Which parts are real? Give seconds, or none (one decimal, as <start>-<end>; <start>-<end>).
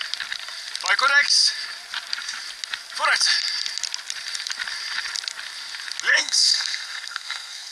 0.0-6.1